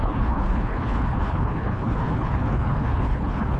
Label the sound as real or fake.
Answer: fake